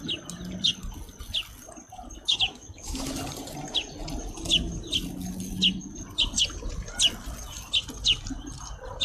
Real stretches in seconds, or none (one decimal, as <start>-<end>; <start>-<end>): 0.0-2.2; 3.1-9.0